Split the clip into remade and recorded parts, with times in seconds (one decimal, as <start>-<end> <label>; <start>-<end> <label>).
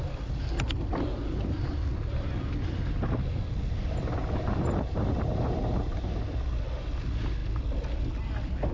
0.0-4.2 recorded; 4.2-6.2 remade; 6.2-8.7 recorded